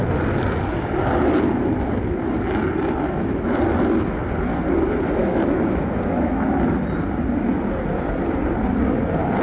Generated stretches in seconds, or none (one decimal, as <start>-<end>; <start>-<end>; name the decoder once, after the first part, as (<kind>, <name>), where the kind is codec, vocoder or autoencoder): 5.2-6.5 (autoencoder, DAC-VAE)